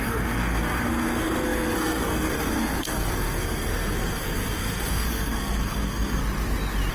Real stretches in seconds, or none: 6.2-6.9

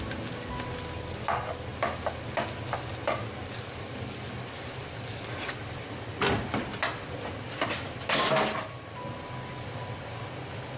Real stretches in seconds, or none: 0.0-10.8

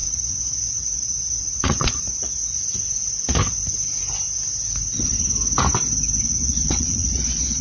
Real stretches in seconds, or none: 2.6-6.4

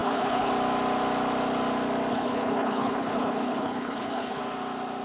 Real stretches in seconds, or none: 0.5-2.1; 4.4-5.0

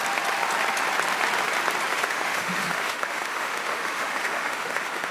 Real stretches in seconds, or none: 0.0-1.9